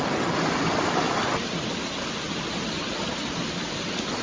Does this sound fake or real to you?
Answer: real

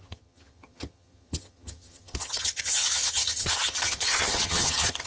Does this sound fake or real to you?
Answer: fake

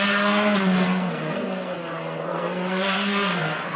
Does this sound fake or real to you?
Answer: fake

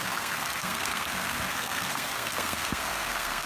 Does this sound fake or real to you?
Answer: fake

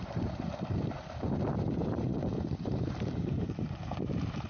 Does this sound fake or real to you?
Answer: fake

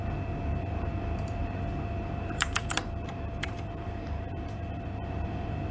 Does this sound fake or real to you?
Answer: fake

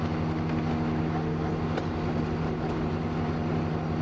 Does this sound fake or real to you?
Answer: real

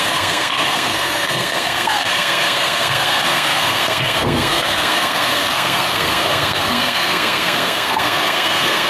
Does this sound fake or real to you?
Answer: fake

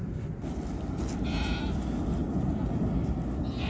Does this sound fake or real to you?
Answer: real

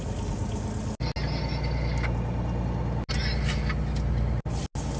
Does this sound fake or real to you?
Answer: real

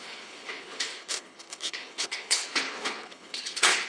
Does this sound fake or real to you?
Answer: fake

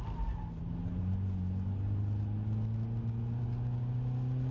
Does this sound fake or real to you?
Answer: real